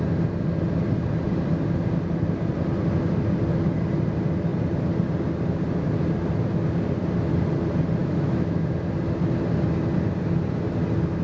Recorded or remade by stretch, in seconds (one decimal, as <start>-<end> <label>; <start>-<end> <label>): 0.0-8.0 recorded; 8.0-8.6 remade; 8.6-11.2 recorded